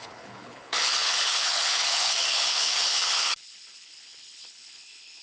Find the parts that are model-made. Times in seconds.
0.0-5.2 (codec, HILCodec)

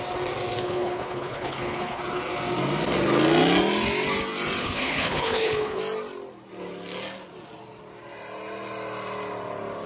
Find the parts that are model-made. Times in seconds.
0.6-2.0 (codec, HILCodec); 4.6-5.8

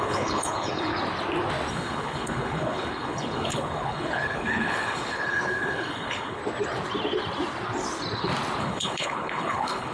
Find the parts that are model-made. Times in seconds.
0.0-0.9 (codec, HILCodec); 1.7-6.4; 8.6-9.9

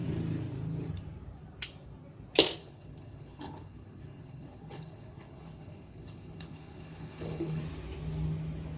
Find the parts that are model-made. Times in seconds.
2.6-7.6 (codec, HILCodec)